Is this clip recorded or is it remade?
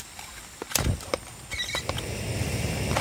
recorded